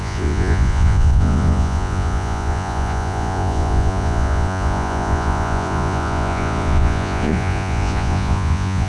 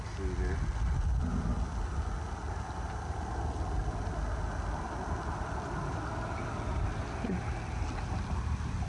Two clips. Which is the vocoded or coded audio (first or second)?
first